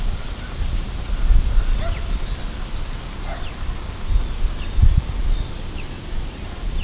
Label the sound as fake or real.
real